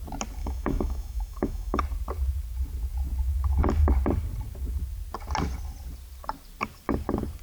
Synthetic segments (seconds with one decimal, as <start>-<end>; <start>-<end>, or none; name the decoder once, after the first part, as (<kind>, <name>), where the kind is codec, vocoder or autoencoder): 0.4-1.8 (autoencoder, DAC-VAE)

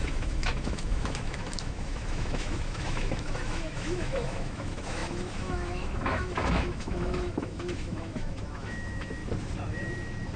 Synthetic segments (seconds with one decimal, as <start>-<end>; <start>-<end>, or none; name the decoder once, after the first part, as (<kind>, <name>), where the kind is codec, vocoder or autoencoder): 0.0-9.2 (autoencoder, DAC-VAE)